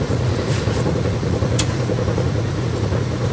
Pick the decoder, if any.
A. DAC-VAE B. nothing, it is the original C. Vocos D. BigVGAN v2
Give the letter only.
C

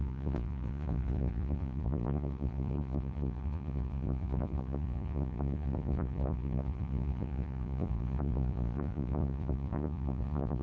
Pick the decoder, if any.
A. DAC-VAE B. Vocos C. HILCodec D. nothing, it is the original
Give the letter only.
B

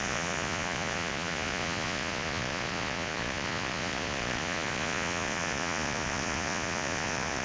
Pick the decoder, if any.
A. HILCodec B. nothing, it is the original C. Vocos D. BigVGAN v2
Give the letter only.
C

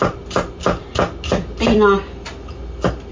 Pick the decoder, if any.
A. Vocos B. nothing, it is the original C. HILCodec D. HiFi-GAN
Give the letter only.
B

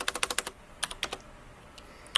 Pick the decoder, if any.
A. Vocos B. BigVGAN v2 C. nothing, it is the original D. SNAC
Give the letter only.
C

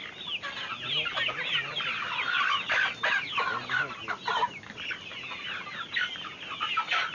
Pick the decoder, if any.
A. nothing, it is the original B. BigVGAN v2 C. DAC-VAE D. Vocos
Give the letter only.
A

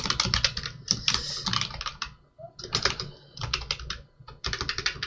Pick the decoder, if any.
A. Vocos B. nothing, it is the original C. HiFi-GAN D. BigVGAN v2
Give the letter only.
B